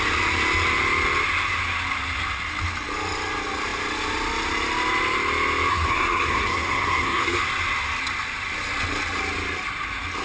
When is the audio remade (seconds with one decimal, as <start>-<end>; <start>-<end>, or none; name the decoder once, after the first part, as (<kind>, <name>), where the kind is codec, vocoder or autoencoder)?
5.7-7.4 (codec, SNAC)